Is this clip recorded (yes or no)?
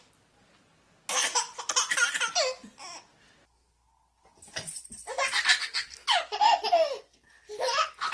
yes